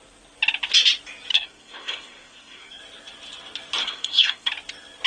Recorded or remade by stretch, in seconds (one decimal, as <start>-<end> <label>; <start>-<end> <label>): 0.0-1.3 recorded; 1.3-2.8 remade; 2.8-3.8 recorded; 3.8-4.5 remade; 4.5-5.1 recorded

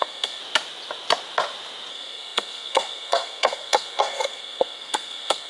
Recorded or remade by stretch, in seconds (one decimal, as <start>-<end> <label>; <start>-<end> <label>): 0.0-0.4 remade; 0.4-1.9 recorded; 1.9-5.5 remade